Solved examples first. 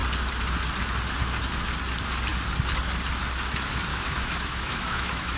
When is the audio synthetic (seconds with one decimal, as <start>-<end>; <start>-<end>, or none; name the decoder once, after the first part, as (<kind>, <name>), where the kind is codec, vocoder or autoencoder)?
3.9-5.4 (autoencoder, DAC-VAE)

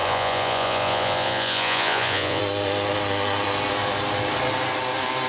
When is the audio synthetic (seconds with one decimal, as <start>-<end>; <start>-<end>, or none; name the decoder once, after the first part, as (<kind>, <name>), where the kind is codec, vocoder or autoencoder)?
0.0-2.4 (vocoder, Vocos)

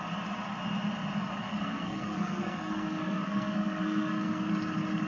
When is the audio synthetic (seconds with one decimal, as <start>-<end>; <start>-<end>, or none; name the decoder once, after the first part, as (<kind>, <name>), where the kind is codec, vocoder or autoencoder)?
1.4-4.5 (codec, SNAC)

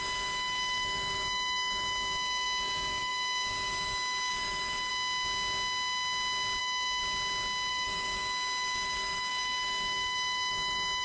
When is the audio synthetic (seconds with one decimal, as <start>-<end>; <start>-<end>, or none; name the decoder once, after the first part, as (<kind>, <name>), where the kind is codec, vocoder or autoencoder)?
0.0-4.9 (autoencoder, DAC-VAE); 6.6-7.0; 7.7-11.0

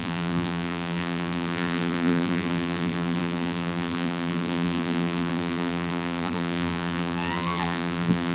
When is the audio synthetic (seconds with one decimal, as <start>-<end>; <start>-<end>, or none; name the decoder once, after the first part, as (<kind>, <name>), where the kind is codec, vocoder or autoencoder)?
0.0-8.3 (vocoder, BigVGAN v2)

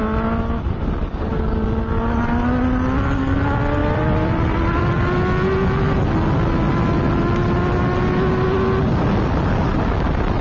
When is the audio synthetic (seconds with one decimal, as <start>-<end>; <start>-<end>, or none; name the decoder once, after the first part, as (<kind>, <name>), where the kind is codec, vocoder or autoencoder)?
3.8-4.8 (vocoder, BigVGAN v2)